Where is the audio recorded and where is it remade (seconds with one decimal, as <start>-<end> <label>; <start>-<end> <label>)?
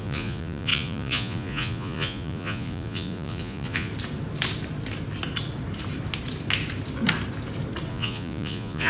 0.0-3.9 remade; 3.9-7.9 recorded; 7.9-8.9 remade